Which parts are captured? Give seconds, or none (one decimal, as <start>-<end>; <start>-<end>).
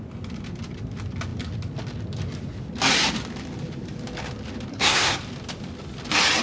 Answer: 0.0-4.7; 5.2-6.4